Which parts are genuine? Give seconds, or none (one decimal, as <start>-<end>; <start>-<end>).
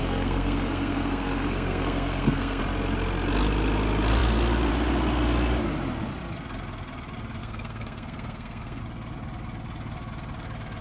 2.6-7.4; 8.8-10.8